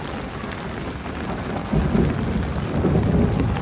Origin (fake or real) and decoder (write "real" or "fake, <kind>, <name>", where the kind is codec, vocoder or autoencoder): real